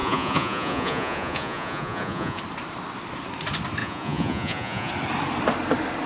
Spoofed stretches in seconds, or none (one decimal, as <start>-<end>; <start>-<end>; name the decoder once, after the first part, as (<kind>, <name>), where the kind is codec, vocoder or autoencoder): 0.0-2.4 (vocoder, Vocos); 3.8-4.9